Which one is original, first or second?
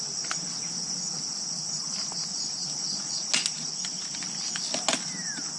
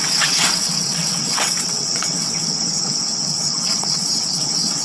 first